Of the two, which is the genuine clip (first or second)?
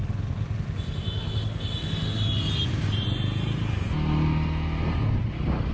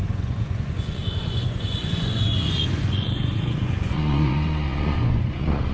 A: first